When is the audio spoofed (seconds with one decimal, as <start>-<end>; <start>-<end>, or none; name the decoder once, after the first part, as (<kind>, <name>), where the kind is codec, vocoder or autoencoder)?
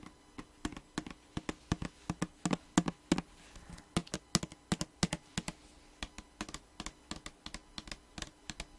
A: none